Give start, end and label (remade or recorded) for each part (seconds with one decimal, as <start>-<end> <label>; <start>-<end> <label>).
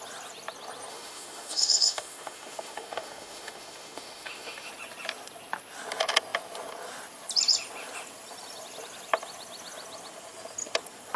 0.0-0.9 recorded; 0.9-4.7 remade; 4.7-11.2 recorded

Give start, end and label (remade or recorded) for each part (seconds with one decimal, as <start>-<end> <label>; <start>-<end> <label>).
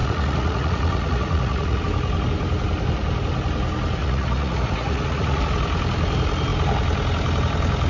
0.0-1.8 remade; 1.8-4.0 recorded; 4.0-5.4 remade; 5.4-7.9 recorded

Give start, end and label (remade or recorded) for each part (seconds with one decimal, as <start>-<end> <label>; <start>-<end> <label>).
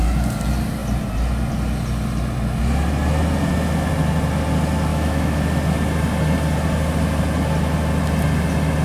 0.0-4.9 recorded; 4.9-5.4 remade; 5.4-8.8 recorded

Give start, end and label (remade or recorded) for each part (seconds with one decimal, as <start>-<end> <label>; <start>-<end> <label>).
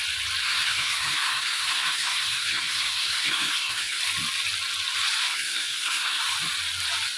0.0-0.4 recorded; 0.4-4.0 remade; 4.0-5.2 recorded; 5.2-6.2 remade; 6.2-7.2 recorded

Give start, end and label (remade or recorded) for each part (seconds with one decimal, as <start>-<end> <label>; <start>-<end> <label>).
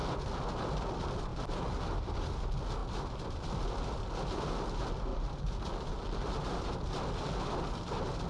0.0-1.3 recorded; 1.3-2.4 remade; 2.4-2.8 recorded; 2.8-4.0 remade; 4.0-5.1 recorded; 5.1-6.6 remade; 6.6-8.3 recorded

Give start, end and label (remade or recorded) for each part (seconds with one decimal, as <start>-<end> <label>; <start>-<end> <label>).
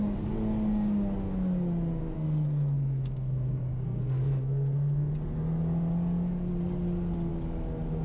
0.0-2.0 recorded; 2.0-5.1 remade; 5.1-8.0 recorded